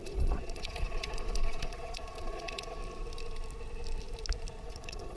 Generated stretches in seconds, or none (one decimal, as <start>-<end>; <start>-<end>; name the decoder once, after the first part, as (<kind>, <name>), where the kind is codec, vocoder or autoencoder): 0.0-2.8 (vocoder, Vocos); 4.6-5.2